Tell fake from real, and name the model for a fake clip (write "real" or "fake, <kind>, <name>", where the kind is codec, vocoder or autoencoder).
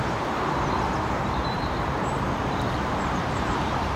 fake, vocoder, BigVGAN v2